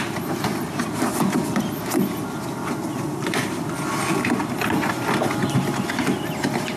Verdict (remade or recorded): recorded